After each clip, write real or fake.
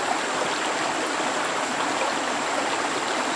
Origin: real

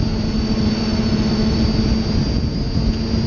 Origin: real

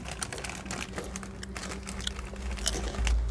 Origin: real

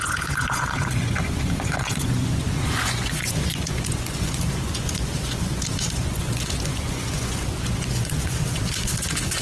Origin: fake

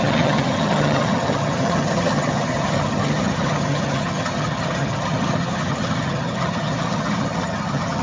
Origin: fake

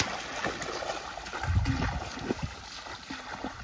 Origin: real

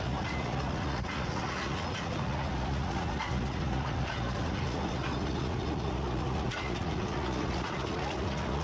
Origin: fake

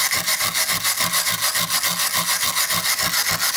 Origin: real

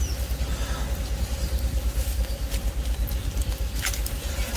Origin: real